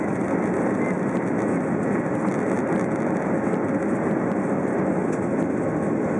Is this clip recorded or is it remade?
recorded